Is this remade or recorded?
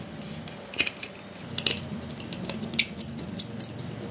recorded